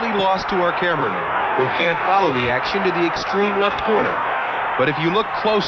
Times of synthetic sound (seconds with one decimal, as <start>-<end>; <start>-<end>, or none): 1.0-2.5; 3.3-4.6